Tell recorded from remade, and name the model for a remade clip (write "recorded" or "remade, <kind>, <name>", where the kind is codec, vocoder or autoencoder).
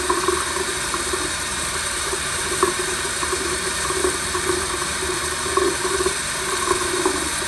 remade, vocoder, BigVGAN v2